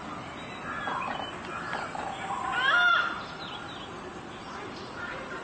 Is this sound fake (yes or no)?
no